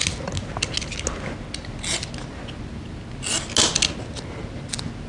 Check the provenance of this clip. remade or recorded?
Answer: recorded